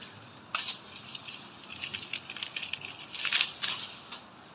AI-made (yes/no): no